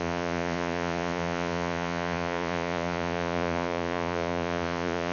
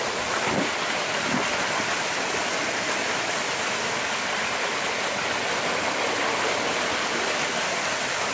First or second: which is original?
second